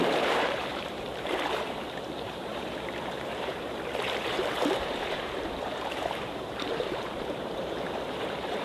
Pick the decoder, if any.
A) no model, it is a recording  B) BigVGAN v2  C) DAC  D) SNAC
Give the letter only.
B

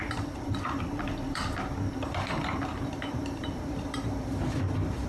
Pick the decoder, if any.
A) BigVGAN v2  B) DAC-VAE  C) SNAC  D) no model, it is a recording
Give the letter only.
A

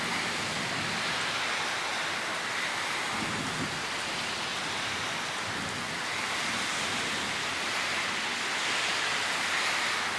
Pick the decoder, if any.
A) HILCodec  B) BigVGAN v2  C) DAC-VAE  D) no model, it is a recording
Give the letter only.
D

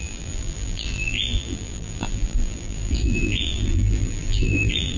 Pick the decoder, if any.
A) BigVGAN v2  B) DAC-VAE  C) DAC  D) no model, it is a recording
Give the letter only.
A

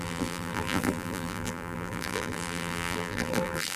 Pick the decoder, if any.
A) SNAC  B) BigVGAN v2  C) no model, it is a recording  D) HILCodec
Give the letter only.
B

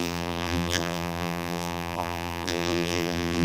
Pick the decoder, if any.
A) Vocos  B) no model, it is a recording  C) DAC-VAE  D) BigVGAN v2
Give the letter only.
D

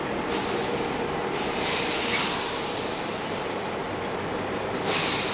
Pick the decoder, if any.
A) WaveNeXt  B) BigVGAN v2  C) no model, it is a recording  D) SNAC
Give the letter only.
C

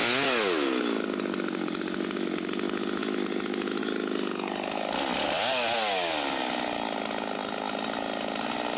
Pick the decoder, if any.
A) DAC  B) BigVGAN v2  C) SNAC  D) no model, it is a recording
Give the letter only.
D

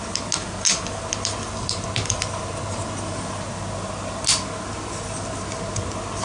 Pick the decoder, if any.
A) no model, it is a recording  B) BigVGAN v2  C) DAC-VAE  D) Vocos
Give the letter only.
A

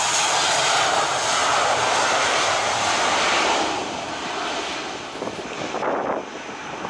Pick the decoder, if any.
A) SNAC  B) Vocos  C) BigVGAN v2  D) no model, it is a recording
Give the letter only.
D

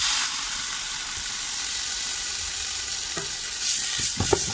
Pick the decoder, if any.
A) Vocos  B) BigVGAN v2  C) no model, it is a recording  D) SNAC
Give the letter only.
C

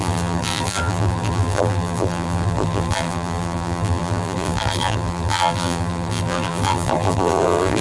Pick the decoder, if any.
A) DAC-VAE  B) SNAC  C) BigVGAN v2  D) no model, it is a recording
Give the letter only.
C